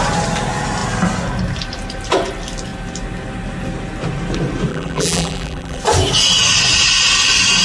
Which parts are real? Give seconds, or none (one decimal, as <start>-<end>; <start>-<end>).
0.0-4.7; 5.8-7.6